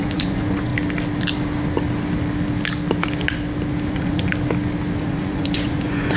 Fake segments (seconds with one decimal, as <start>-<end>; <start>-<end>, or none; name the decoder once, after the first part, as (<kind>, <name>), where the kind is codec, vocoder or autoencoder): 0.0-0.7 (vocoder, Vocos); 3.9-4.3; 5.0-6.2